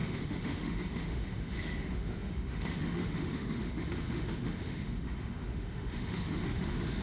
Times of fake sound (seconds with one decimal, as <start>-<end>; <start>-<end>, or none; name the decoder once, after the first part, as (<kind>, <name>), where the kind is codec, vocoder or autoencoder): 0.0-7.0 (autoencoder, DAC-VAE)